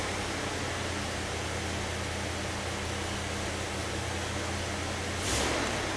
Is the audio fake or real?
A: real